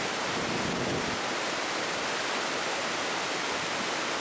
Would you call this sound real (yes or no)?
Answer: yes